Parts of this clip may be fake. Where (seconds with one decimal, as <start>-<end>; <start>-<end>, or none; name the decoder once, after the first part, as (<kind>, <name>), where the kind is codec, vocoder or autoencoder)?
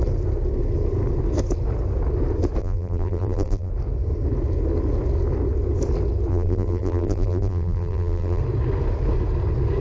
2.6-3.7 (vocoder, BigVGAN v2); 6.3-8.4